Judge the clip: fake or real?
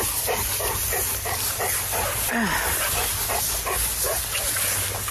real